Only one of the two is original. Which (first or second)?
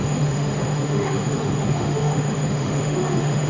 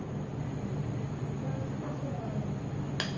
second